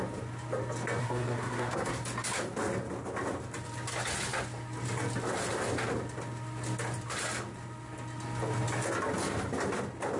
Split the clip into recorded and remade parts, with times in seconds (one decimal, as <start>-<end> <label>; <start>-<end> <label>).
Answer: 0.0-1.0 recorded; 1.0-2.0 remade; 2.0-10.2 recorded